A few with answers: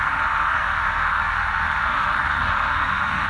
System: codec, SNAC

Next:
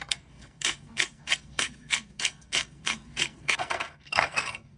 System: codec, SNAC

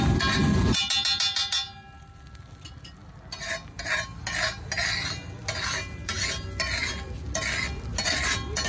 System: none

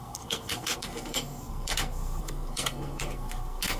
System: codec, SNAC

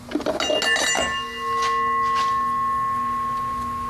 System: none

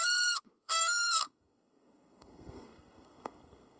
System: codec, SNAC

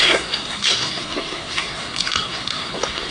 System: codec, SNAC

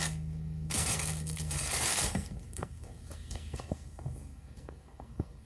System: codec, SNAC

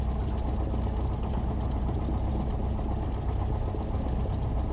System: none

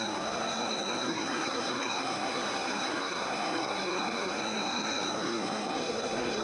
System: codec, SNAC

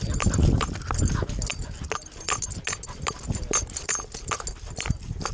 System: none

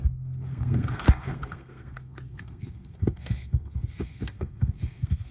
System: codec, SNAC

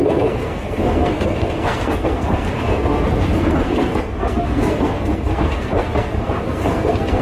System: codec, SNAC